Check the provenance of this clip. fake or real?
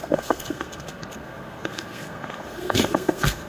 fake